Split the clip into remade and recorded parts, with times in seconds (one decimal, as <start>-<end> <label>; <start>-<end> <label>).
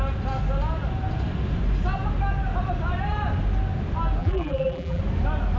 0.0-4.2 recorded; 4.2-5.0 remade; 5.0-5.6 recorded